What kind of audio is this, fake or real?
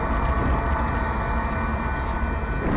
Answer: real